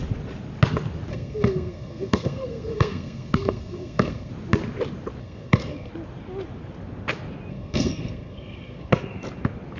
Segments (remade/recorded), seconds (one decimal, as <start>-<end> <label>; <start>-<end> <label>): 0.0-1.1 recorded; 1.1-4.3 remade; 4.3-5.2 recorded; 5.2-5.9 remade; 5.9-7.5 recorded; 7.5-8.9 remade; 8.9-9.8 recorded